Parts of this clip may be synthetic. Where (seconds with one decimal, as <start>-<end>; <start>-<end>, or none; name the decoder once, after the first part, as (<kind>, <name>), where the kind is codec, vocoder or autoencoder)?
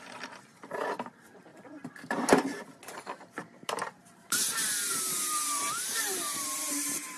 0.0-0.5 (vocoder, BigVGAN v2); 1.1-1.5; 2.9-7.2